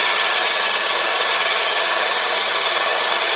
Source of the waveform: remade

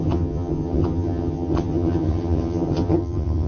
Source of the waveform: remade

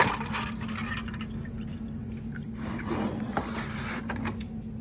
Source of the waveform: recorded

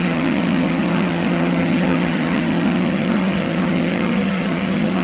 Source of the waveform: remade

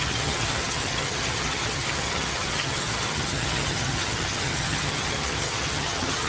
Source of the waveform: remade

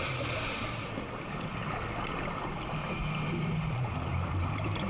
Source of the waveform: recorded